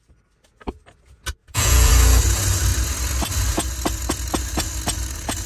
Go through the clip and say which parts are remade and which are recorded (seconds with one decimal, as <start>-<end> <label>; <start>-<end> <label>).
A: 0.0-1.4 recorded; 1.4-1.9 remade; 1.9-5.5 recorded